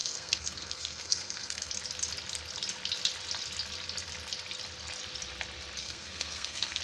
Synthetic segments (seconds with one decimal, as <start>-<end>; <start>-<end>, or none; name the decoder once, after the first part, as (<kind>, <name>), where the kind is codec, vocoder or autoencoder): 0.0-1.7 (codec, SNAC); 5.8-6.8